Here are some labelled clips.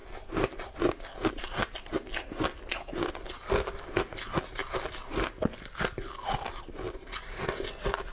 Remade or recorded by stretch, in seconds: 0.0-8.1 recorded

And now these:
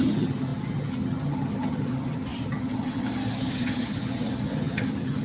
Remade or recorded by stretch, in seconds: 0.0-5.2 remade